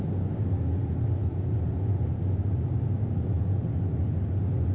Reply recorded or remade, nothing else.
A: recorded